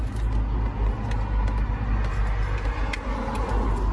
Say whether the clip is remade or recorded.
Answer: recorded